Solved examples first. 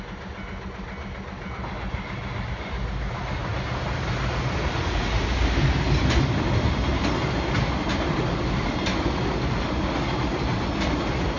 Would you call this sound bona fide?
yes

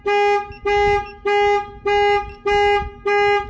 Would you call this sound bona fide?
yes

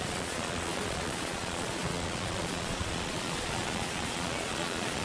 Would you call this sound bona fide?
no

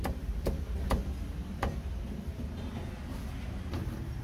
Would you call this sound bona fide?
yes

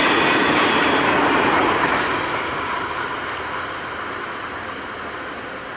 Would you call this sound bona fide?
yes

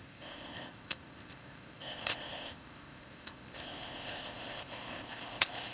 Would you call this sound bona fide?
no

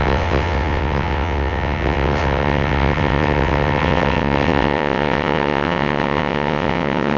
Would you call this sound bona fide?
no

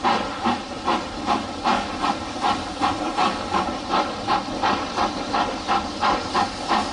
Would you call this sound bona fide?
yes